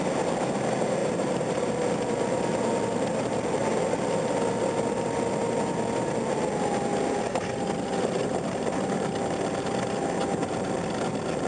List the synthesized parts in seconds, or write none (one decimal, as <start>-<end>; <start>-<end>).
1.0-1.6; 3.6-5.8; 6.9-10.6